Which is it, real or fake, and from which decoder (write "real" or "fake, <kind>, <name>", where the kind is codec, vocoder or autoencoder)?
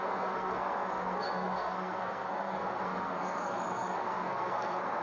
fake, codec, SNAC